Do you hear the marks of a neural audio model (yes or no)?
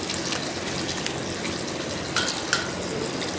no